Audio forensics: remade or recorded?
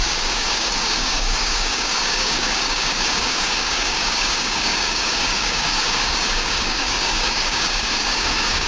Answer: remade